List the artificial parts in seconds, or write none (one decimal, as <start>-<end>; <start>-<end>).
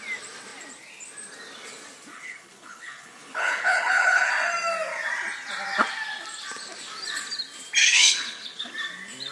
2.1-4.3; 7.8-8.7